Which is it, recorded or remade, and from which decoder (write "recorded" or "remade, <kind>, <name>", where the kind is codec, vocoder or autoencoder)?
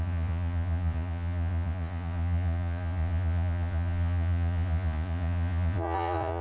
remade, vocoder, Vocos